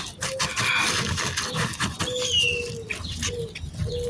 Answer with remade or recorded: recorded